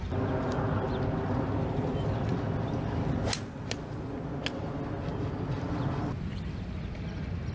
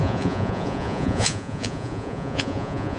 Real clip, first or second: first